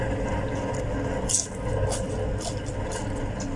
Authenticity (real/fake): real